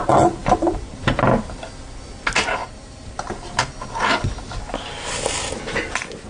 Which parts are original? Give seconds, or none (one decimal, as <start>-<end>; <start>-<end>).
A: 0.0-2.6; 3.7-6.3